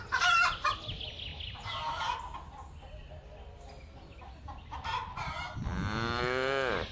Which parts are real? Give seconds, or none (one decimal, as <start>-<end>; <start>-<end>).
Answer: 0.0-6.9